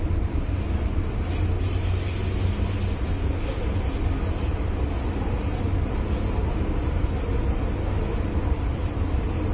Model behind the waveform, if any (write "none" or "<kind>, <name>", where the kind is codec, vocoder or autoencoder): none